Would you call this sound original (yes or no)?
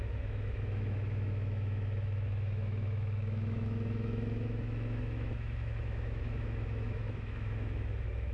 no